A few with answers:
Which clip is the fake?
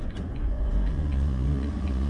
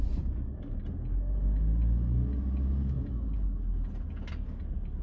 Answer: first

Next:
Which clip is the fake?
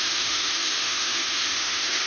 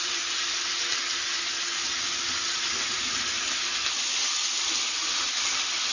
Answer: first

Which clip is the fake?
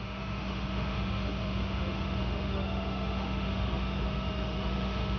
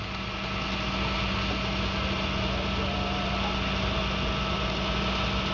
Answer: first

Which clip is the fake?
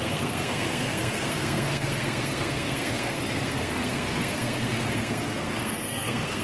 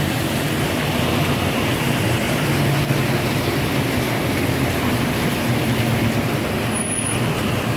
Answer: first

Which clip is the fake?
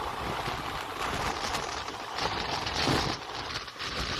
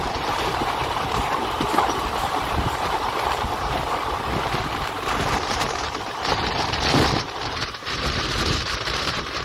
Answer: second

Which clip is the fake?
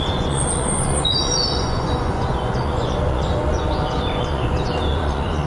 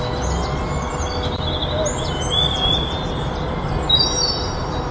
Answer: first